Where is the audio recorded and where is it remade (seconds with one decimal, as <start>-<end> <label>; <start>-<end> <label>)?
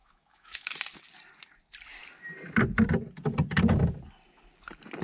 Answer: 0.0-0.7 remade; 0.7-5.0 recorded